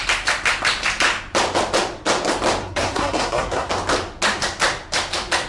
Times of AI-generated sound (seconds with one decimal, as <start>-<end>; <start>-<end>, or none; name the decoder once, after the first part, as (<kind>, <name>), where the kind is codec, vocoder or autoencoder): 2.6-3.7 (codec, SNAC)